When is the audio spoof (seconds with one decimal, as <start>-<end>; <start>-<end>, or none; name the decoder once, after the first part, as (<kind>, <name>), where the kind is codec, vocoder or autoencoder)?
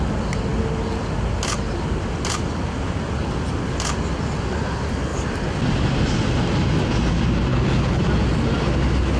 7.5-8.0 (codec, HILCodec)